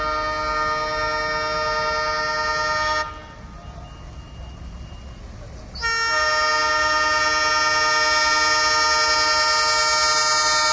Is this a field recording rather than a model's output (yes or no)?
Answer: yes